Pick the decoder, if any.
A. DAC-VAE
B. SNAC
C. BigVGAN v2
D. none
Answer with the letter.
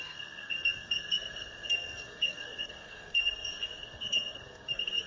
B